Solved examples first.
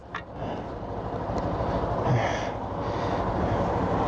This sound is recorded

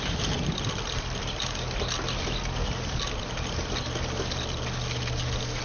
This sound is recorded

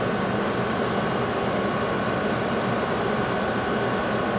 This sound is recorded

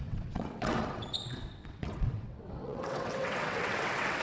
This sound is remade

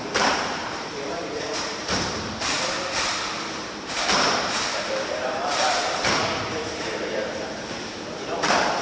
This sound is remade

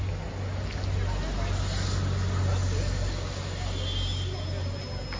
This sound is recorded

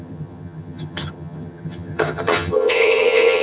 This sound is remade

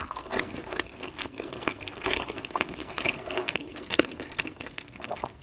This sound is remade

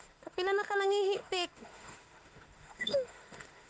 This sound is remade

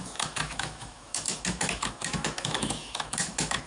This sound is remade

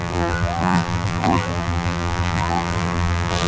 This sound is remade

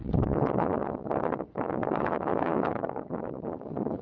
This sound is remade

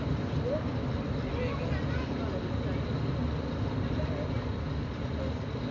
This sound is recorded